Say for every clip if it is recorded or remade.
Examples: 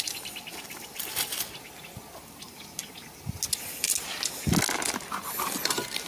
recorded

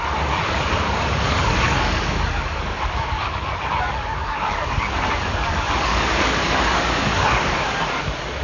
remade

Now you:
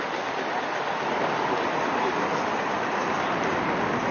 recorded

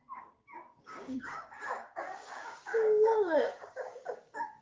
remade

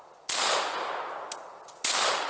recorded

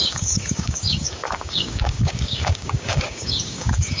remade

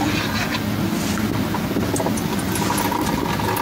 recorded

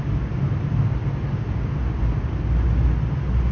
recorded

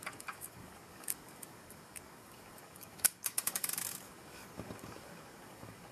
remade